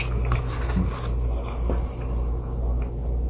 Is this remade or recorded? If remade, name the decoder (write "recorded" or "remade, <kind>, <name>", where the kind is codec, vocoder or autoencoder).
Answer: recorded